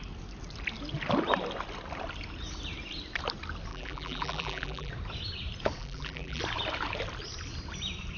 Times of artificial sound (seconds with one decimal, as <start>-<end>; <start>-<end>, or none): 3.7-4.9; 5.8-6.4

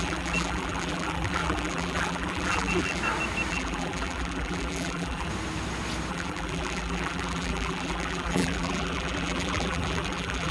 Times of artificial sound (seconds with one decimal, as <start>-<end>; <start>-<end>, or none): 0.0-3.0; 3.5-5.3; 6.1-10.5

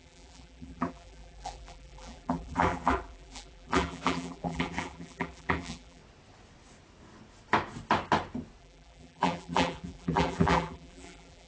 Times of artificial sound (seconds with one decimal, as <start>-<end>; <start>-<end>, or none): 0.0-6.0; 8.6-11.5

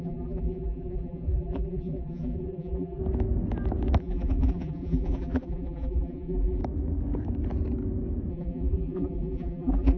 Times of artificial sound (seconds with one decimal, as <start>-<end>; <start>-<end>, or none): 0.0-3.0; 4.0-6.6; 8.3-10.0

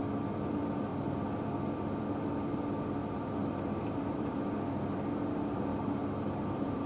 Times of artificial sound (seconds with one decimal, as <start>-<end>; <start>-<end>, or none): 3.0-4.4; 5.7-6.9

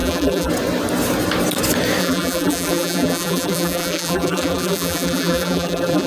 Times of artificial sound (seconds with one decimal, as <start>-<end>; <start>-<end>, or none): 0.0-0.5; 2.0-6.1

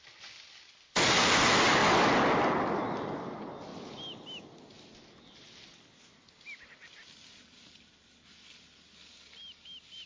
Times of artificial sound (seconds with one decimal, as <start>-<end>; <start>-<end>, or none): none

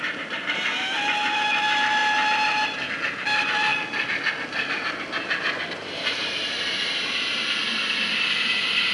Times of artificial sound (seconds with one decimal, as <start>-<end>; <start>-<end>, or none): none